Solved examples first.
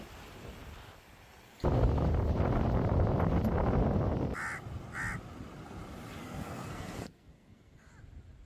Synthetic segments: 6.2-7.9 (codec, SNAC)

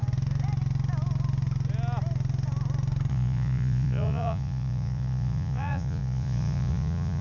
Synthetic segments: 3.1-7.2 (vocoder, Vocos)

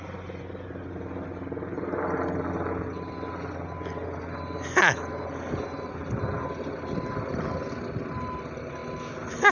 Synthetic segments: none

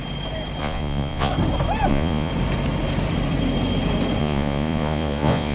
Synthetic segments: 0.6-1.3 (vocoder, Vocos); 1.9-2.3; 4.2-5.5

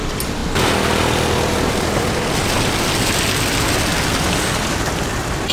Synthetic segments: none

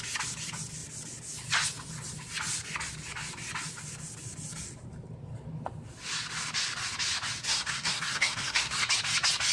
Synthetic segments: 7.4-8.9 (codec, SNAC)

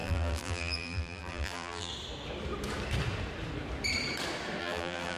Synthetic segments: 0.0-1.9 (vocoder, BigVGAN v2); 4.6-5.2